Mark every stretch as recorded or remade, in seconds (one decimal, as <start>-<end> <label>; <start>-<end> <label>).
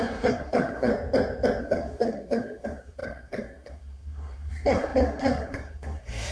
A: 0.0-0.9 remade; 0.9-1.6 recorded; 1.6-6.3 remade